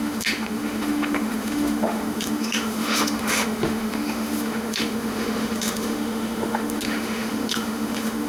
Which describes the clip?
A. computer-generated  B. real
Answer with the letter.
A